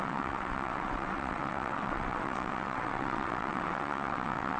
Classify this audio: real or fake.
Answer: fake